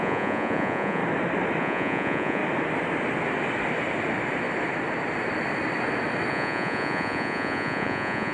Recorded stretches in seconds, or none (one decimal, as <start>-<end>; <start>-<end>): 1.0-1.6; 2.4-6.3